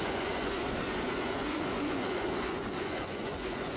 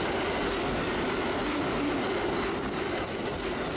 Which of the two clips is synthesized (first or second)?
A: first